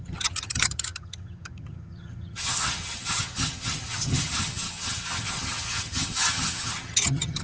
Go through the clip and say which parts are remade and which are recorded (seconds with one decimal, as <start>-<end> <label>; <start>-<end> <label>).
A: 0.0-7.4 remade